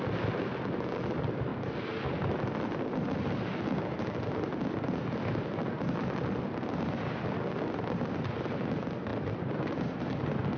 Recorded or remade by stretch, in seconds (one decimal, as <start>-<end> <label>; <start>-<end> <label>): 0.0-10.6 recorded